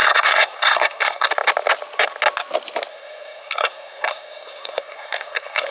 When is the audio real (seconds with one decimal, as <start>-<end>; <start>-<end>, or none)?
1.3-2.9